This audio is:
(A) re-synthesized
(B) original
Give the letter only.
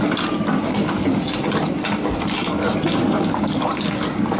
B